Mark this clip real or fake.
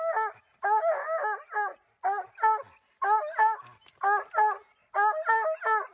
real